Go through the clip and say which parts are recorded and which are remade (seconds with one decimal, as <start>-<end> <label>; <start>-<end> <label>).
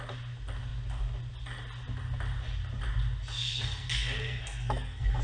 0.0-3.4 recorded; 3.4-5.2 remade